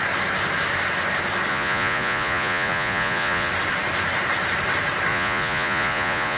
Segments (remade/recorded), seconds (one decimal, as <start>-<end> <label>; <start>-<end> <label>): 0.0-1.5 recorded; 1.5-3.5 remade; 3.5-5.1 recorded; 5.1-6.4 remade